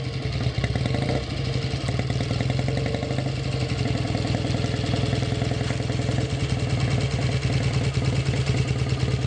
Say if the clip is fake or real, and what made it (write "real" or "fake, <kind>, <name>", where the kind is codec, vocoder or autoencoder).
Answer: real